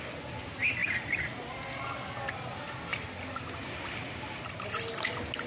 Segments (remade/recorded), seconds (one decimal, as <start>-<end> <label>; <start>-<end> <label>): 0.0-5.5 recorded